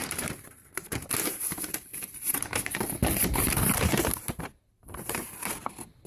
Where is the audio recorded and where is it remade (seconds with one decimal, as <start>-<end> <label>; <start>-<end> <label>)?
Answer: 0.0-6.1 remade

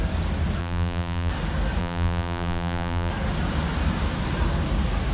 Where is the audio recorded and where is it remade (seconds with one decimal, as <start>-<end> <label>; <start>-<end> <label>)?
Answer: 0.0-0.6 recorded; 0.6-1.3 remade; 1.3-1.8 recorded; 1.8-3.1 remade; 3.1-5.1 recorded

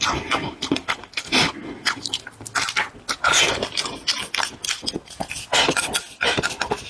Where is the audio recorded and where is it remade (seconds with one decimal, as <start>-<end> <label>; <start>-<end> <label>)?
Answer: 0.0-6.9 recorded

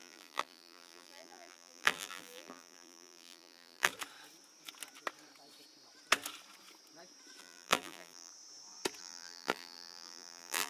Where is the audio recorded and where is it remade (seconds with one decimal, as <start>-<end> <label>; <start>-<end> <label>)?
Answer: 0.0-3.9 remade; 3.9-7.4 recorded; 7.4-8.3 remade; 8.3-9.0 recorded; 9.0-10.7 remade

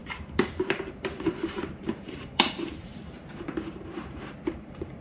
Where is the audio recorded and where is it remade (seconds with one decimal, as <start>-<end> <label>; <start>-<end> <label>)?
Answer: 0.0-5.0 remade

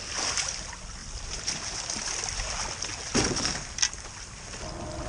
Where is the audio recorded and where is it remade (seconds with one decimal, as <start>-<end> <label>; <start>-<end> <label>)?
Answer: 0.0-1.0 recorded; 1.0-2.2 remade; 2.2-5.1 recorded